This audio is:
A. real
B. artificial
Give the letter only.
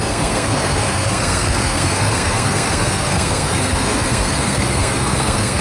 B